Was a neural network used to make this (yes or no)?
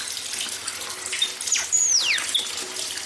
no